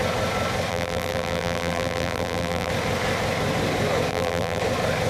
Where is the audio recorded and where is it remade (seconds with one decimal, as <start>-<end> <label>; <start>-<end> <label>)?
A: 0.0-0.7 recorded; 0.7-2.7 remade; 2.7-4.1 recorded; 4.1-4.6 remade; 4.6-5.1 recorded